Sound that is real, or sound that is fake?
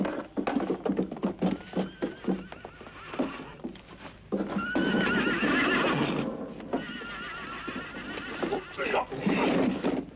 real